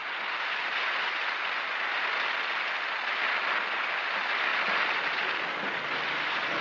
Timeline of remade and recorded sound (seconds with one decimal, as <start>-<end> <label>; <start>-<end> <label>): 0.0-6.6 recorded